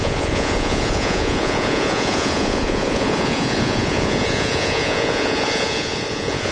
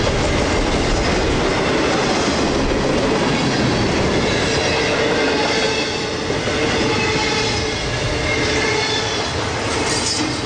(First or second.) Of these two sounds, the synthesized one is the first